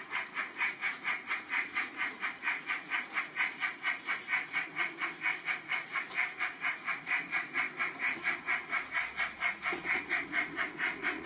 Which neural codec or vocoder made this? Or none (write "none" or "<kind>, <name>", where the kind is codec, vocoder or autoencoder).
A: vocoder, Vocos